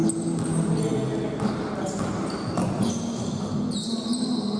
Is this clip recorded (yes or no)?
yes